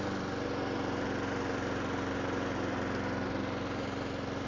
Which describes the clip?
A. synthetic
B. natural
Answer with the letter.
B